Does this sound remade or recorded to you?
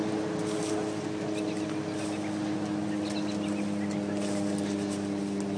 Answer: recorded